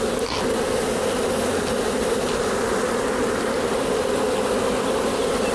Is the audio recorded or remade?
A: recorded